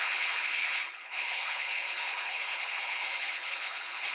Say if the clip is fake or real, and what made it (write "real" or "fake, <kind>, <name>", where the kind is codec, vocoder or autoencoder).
fake, codec, HILCodec